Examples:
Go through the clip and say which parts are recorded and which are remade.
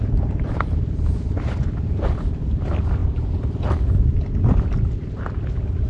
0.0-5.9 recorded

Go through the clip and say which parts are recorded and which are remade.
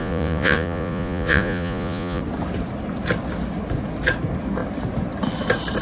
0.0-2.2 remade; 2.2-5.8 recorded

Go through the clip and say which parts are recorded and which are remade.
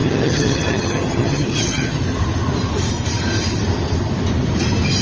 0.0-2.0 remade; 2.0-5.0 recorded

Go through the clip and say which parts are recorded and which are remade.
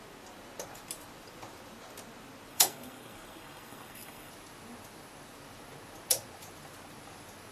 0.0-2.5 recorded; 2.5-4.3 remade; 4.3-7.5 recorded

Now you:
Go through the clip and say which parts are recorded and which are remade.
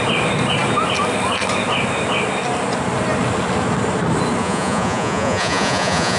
0.0-4.4 recorded; 4.4-6.2 remade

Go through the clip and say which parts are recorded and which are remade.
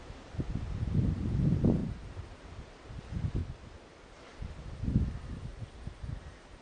0.0-1.8 recorded; 1.8-3.0 remade; 3.0-5.5 recorded; 5.5-6.6 remade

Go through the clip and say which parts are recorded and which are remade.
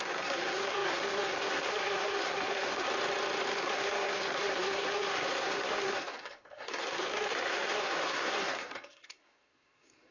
0.0-2.9 remade; 2.9-3.5 recorded; 3.5-10.1 remade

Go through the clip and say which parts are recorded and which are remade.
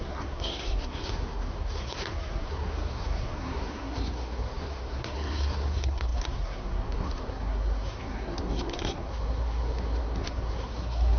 0.0-11.2 remade